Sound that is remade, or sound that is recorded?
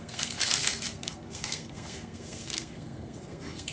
remade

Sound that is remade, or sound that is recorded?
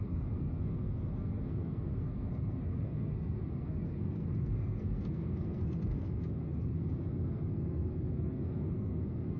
remade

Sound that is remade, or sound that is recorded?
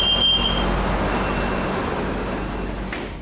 recorded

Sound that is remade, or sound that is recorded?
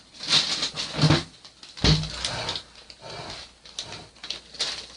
recorded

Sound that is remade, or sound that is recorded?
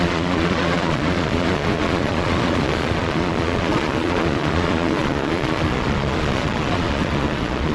remade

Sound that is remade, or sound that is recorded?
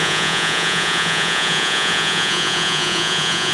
remade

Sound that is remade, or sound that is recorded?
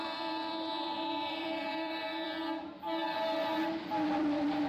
remade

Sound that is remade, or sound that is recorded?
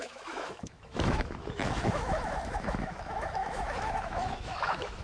remade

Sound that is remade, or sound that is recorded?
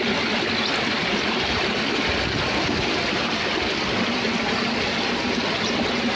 recorded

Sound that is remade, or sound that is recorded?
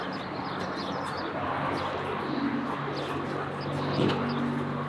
recorded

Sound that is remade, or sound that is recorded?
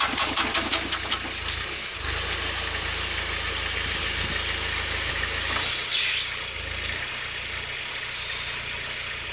recorded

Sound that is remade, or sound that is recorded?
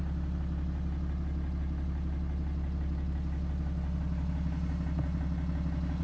recorded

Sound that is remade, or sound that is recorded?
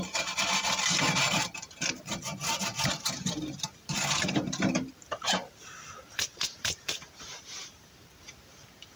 remade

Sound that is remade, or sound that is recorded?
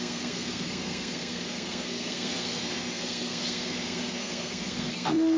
remade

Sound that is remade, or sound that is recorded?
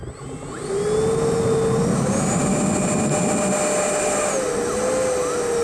recorded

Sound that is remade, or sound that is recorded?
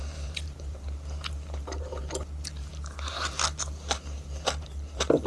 remade